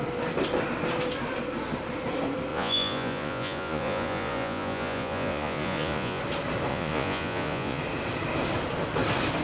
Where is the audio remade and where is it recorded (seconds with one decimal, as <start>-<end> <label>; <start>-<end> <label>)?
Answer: 0.0-2.5 recorded; 2.5-6.2 remade; 6.2-6.7 recorded; 6.7-7.8 remade; 7.8-9.4 recorded